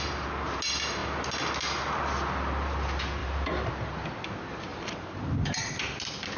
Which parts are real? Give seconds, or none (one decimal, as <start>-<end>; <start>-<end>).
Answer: 0.0-3.2; 3.7-4.7; 5.3-6.4